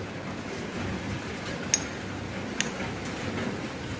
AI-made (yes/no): no